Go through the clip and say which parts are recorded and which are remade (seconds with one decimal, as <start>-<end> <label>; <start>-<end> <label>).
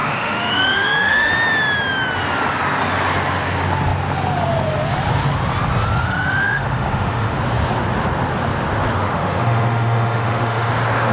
0.0-1.3 remade; 1.3-6.0 recorded; 6.0-7.4 remade; 7.4-8.9 recorded; 8.9-10.7 remade; 10.7-11.1 recorded